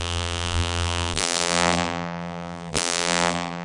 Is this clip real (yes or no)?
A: no